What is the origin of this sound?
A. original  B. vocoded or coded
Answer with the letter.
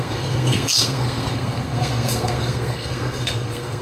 B